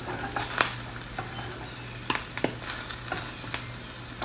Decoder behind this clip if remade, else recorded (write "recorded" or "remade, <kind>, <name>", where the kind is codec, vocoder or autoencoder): recorded